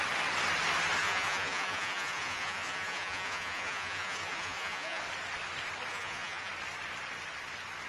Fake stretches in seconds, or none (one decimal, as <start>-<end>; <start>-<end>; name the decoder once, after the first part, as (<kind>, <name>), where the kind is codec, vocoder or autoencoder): 1.0-5.0 (vocoder, Vocos); 5.9-6.5